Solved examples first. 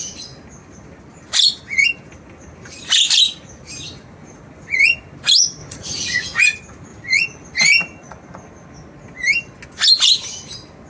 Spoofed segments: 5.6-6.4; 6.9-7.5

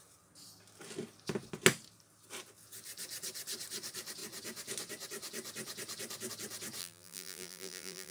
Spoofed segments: 6.8-8.1

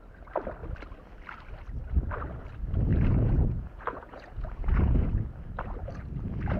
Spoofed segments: 2.9-5.1

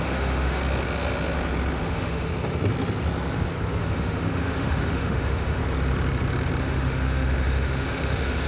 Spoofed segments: 0.0-0.6; 1.9-2.3; 3.8-5.6; 6.6-8.5